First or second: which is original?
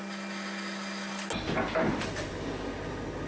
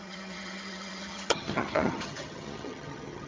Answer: first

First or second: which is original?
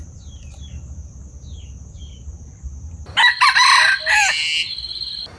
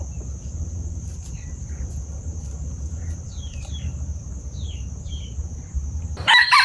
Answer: first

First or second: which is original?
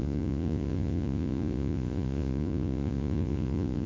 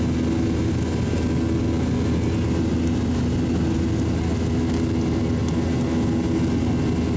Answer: second